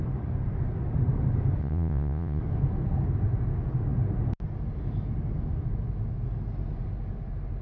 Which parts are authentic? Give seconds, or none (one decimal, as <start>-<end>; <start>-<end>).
0.0-1.6; 2.4-7.6